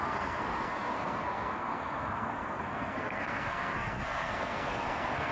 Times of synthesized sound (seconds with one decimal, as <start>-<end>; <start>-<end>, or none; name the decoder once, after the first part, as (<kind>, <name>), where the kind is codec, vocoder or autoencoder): 0.0-5.3 (codec, SNAC)